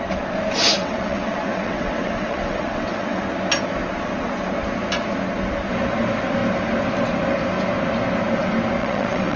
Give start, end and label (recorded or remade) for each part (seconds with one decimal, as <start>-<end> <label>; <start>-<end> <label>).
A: 0.0-0.8 recorded; 0.8-3.2 remade; 3.2-8.8 recorded; 8.8-9.4 remade

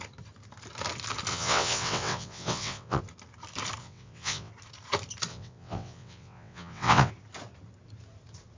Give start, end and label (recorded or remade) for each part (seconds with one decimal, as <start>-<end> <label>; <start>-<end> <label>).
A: 0.0-1.3 recorded; 1.3-3.0 remade; 3.0-3.8 recorded; 3.8-4.5 remade; 4.5-5.3 recorded; 5.3-7.1 remade; 7.1-8.6 recorded

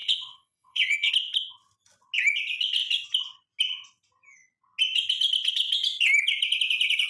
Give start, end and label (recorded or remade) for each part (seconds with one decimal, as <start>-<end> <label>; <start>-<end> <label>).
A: 0.0-1.1 remade; 1.1-7.1 recorded

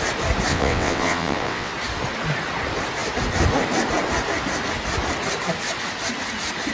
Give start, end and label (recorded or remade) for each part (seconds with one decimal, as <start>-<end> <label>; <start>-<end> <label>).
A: 0.0-0.5 recorded; 0.5-1.7 remade; 1.7-6.7 recorded

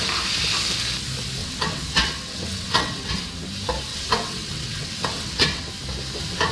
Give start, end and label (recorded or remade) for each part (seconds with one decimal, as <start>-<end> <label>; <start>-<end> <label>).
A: 0.0-1.4 recorded; 1.4-3.1 remade; 3.1-3.9 recorded; 3.9-5.7 remade; 5.7-6.5 recorded

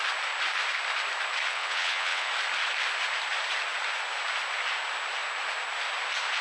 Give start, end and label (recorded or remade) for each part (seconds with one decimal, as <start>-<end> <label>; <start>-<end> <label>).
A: 0.0-1.5 recorded; 1.5-2.3 remade; 2.3-6.4 recorded

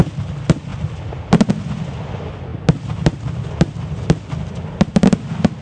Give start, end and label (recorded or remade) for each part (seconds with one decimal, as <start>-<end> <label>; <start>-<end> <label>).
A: 0.0-5.6 recorded